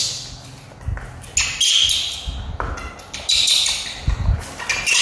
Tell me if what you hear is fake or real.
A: real